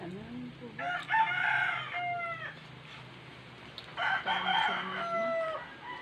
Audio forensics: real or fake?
real